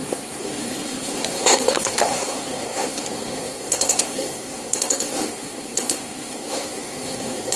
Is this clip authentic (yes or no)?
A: no